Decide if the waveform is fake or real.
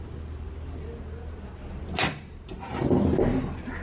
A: real